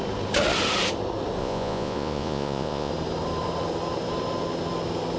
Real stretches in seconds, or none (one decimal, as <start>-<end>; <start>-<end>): 0.0-1.4; 2.9-5.2

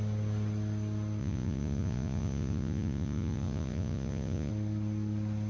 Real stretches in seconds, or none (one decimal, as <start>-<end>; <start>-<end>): 0.0-1.2; 4.5-5.5

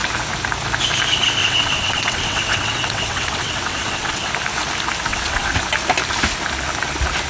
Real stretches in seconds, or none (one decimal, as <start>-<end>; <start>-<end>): 0.0-1.4; 4.3-5.1; 5.6-7.3